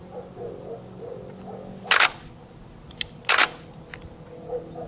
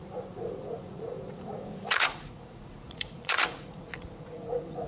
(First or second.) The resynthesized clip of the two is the second